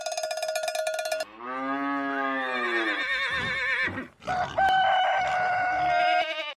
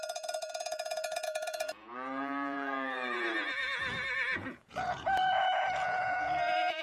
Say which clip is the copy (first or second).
second